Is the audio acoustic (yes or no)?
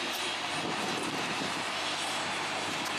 yes